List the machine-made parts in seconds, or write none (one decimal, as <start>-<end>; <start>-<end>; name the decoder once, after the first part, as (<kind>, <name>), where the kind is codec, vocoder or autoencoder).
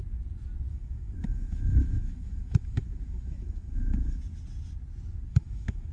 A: 0.7-4.2 (autoencoder, DAC-VAE); 5.3-5.9